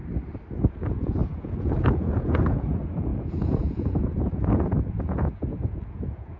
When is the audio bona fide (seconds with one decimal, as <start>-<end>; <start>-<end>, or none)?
0.0-0.7